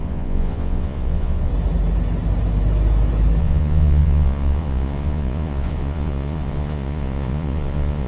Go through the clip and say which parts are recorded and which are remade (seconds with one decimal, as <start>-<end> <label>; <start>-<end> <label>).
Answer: 0.0-1.5 remade; 1.5-3.4 recorded; 3.4-8.1 remade